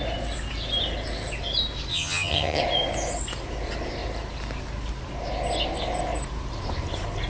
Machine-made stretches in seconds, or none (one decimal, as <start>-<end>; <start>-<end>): 1.9-2.6